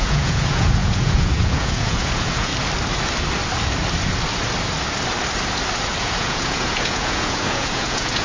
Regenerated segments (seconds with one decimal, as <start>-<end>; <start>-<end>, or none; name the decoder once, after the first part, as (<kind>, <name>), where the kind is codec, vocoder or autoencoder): 0.0-2.5 (vocoder, Vocos); 6.0-8.2